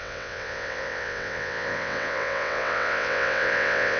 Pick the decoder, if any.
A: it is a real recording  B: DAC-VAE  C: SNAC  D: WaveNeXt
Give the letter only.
D